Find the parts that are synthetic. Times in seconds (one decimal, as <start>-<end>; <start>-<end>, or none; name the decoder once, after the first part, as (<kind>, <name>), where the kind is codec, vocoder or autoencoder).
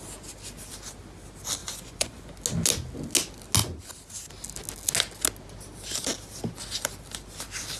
1.6-2.3 (vocoder, Vocos)